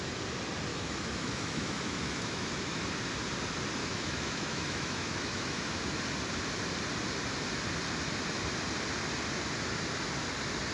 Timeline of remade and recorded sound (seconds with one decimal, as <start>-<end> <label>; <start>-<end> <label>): 0.0-0.7 recorded; 0.7-2.8 remade; 2.8-3.8 recorded; 3.8-6.0 remade; 6.0-10.7 recorded